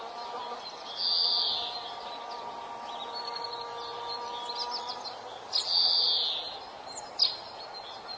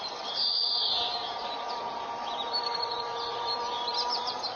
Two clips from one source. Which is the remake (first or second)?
second